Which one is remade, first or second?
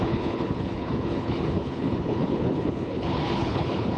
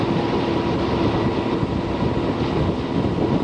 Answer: first